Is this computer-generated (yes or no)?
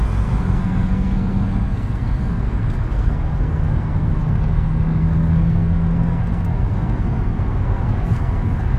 yes